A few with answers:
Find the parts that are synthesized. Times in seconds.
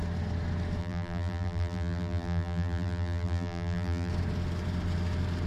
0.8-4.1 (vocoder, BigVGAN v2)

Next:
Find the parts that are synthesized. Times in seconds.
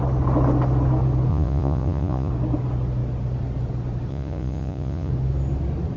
1.3-2.3 (vocoder, Vocos); 4.1-5.1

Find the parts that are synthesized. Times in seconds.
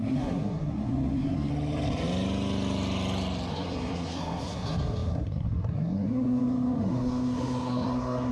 0.0-1.5 (codec, SNAC); 3.5-8.3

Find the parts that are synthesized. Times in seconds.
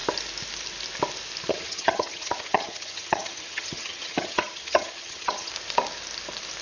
1.5-5.5 (vocoder, HiFi-GAN)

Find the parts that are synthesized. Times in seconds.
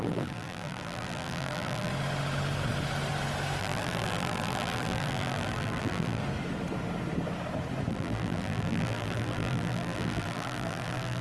0.0-1.9 (vocoder, BigVGAN v2); 3.6-6.2; 7.9-11.2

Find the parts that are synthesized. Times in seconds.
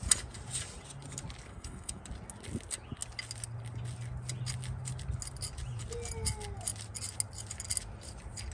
1.5-2.0 (codec, SNAC)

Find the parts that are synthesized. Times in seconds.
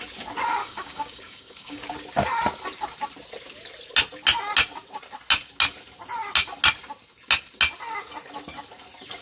0.6-1.8 (codec, DAC)